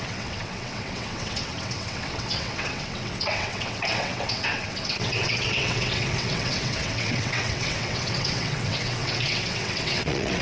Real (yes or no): no